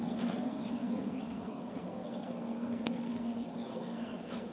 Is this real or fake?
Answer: fake